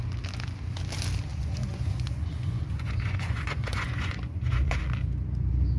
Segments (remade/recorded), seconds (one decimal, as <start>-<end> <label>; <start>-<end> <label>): 0.0-1.3 recorded; 1.3-4.8 remade; 4.8-5.8 recorded